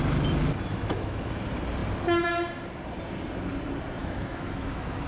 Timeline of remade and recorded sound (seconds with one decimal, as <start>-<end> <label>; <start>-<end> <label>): 0.0-0.7 recorded; 0.7-1.4 remade; 1.4-4.0 recorded; 4.0-5.1 remade

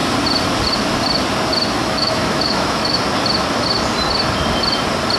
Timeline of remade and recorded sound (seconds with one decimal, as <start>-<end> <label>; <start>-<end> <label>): 0.0-1.8 recorded; 1.8-3.0 remade; 3.0-5.2 recorded

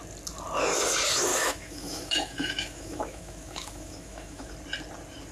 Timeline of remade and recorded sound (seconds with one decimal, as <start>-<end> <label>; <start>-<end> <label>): 0.0-1.3 recorded; 1.3-4.5 remade; 4.5-5.3 recorded

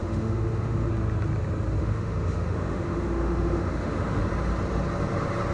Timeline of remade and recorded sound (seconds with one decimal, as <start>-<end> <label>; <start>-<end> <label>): 0.0-0.9 remade; 0.9-1.8 recorded; 1.8-4.2 remade; 4.2-5.5 recorded